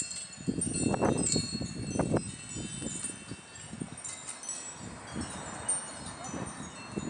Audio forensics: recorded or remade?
recorded